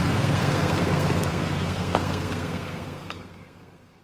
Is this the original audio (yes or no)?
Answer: no